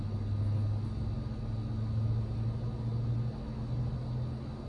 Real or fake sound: real